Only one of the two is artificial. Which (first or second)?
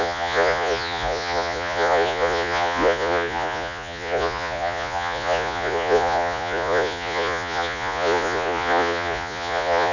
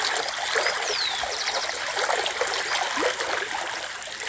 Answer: first